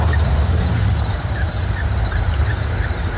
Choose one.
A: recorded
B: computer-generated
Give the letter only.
B